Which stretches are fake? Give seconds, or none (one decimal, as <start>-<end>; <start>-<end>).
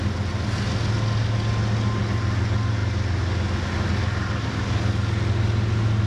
none